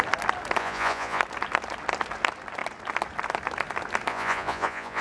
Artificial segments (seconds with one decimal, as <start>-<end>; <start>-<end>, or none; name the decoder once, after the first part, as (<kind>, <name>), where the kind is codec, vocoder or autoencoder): 0.6-1.2 (vocoder, Vocos); 4.1-5.0